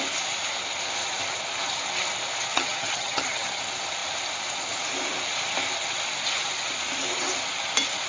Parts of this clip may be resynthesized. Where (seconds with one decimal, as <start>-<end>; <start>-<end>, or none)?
2.5-3.6